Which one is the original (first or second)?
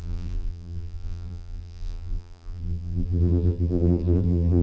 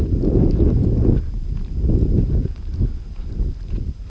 second